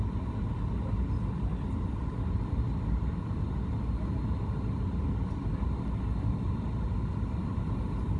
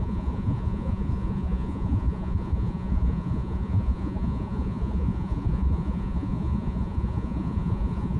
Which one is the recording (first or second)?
first